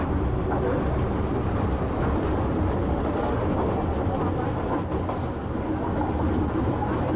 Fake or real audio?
real